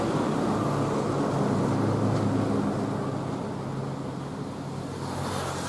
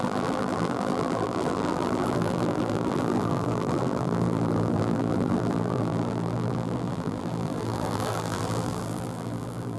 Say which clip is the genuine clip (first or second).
first